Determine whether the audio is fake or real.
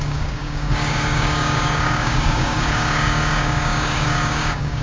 fake